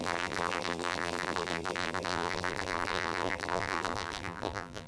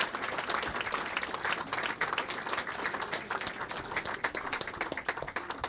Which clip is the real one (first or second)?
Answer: second